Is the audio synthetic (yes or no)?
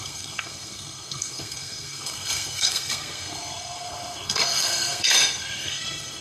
yes